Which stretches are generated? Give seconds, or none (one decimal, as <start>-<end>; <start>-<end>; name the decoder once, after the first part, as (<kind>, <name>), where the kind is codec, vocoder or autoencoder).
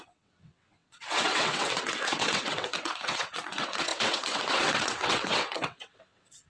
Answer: 0.0-6.5 (vocoder, WaveNeXt)